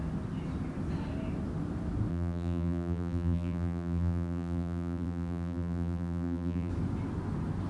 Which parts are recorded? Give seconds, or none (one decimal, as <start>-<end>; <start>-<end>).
0.0-2.1; 6.7-7.7